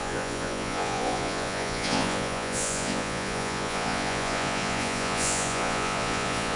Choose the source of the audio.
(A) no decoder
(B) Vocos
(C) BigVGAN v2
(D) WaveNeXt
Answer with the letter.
B